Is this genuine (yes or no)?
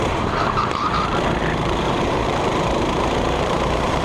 no